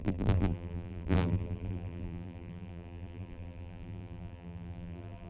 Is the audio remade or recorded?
remade